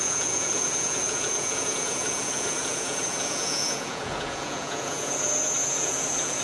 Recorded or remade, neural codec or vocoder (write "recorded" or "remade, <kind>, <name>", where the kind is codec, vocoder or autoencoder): remade, vocoder, Vocos